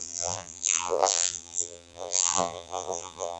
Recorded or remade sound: remade